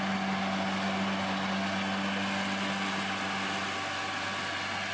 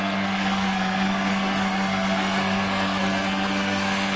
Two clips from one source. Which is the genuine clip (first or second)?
first